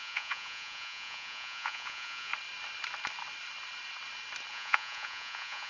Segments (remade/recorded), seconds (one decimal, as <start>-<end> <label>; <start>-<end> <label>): 0.0-2.3 remade; 2.3-4.5 recorded; 4.5-5.7 remade